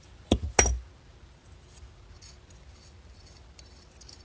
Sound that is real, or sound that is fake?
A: real